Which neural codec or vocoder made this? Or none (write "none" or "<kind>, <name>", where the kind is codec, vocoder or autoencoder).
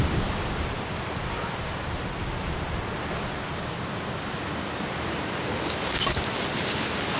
none